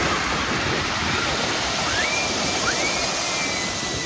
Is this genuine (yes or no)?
yes